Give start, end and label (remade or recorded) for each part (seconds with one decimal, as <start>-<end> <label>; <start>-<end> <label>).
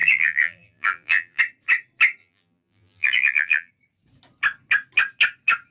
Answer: 0.0-1.4 remade; 1.4-2.2 recorded; 2.2-3.7 remade; 3.7-5.7 recorded